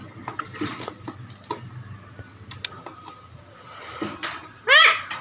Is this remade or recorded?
recorded